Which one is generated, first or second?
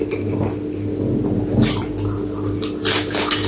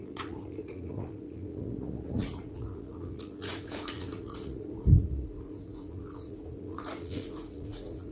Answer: second